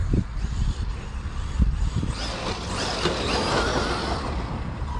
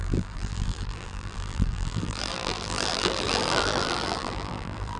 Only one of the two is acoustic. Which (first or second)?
first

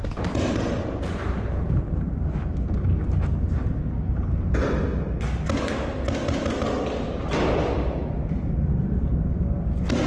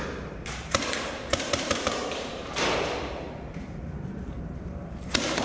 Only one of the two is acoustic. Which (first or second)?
first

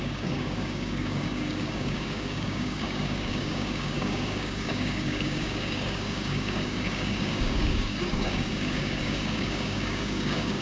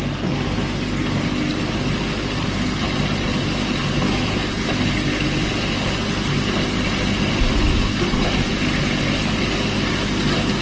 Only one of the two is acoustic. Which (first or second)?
second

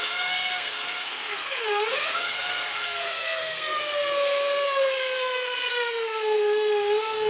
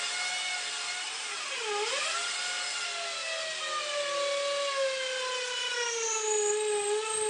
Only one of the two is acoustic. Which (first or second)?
second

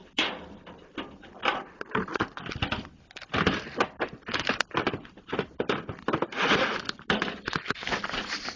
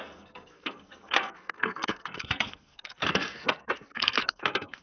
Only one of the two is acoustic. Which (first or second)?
first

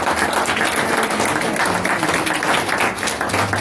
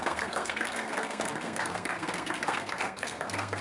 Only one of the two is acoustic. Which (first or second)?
first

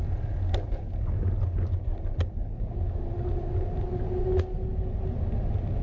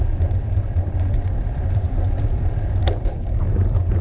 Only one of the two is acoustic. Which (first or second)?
first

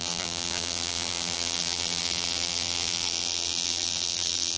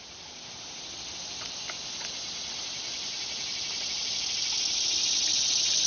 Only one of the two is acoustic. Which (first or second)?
second